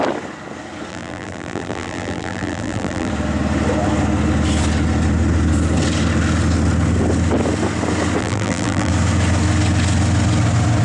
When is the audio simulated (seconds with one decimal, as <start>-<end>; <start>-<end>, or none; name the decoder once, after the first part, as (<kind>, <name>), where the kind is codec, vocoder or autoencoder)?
0.9-3.1 (vocoder, BigVGAN v2); 8.2-8.9